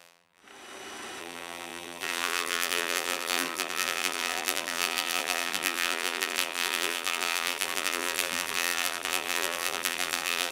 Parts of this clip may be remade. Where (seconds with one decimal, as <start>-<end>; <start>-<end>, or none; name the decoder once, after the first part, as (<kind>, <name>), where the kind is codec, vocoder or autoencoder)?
0.0-0.4 (vocoder, BigVGAN v2); 1.2-10.5